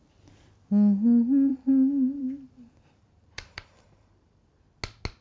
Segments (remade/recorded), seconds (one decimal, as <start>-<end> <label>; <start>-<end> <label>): 0.0-1.5 recorded; 1.5-4.6 remade; 4.6-5.2 recorded